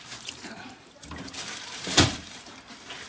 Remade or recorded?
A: remade